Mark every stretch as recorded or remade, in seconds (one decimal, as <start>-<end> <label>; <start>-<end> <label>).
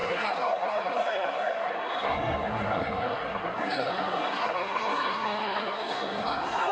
0.0-6.7 remade